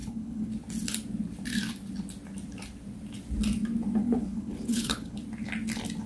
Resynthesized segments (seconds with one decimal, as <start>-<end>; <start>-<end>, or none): 0.0-0.5; 4.0-5.2